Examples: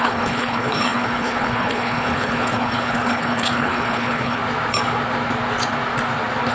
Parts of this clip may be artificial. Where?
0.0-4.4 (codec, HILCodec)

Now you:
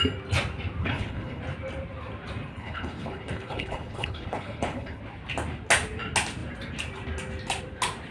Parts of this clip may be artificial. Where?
0.8-1.4 (codec, HILCodec); 2.5-5.0